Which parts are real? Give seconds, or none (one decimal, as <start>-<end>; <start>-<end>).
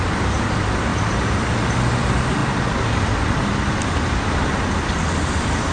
0.0-5.7